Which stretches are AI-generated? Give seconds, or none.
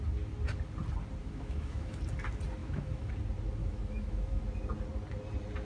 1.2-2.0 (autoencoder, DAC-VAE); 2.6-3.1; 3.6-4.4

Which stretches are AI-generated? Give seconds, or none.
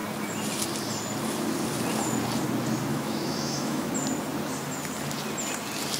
2.9-3.9 (autoencoder, DAC-VAE)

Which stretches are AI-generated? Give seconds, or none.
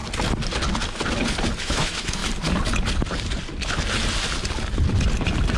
1.6-2.2 (autoencoder, DAC-VAE)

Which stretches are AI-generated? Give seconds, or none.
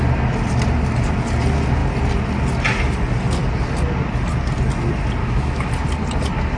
5.2-5.7 (autoencoder, DAC-VAE)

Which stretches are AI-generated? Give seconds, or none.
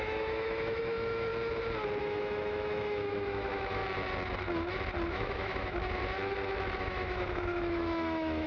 0.0-1.3 (autoencoder, DAC-VAE); 2.0-3.8; 5.1-6.0; 6.8-8.5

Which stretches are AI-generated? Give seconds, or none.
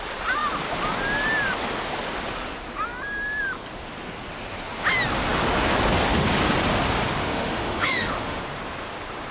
7.2-8.4 (autoencoder, DAC-VAE)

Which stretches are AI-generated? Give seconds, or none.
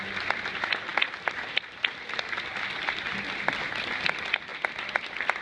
none